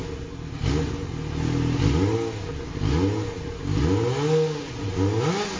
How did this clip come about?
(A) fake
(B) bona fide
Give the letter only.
B